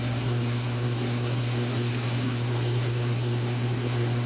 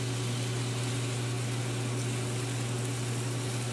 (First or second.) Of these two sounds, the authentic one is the second